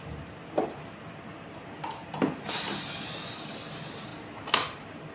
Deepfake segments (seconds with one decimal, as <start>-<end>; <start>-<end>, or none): none